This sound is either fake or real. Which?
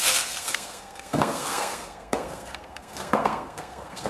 fake